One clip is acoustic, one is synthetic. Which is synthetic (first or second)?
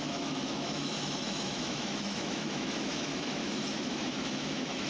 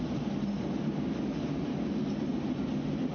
first